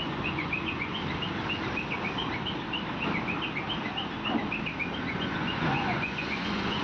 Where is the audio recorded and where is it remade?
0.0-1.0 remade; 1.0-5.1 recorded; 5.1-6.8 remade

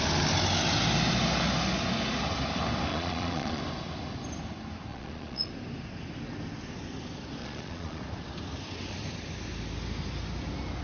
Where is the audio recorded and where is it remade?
0.0-2.9 recorded; 2.9-3.6 remade; 3.6-4.9 recorded; 4.9-5.5 remade; 5.5-7.4 recorded; 7.4-8.0 remade; 8.0-10.8 recorded

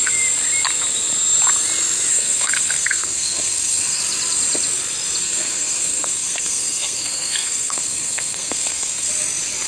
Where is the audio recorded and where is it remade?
0.0-2.1 recorded; 2.1-4.0 remade; 4.0-5.2 recorded; 5.2-9.1 remade; 9.1-9.7 recorded